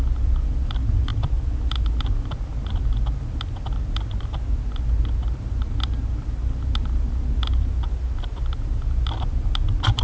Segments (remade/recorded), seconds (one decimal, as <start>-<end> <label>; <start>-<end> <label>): 0.0-10.0 recorded